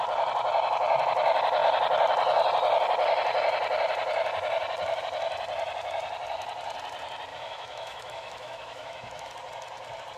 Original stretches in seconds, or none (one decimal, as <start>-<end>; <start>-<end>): 0.0-7.3; 9.3-10.2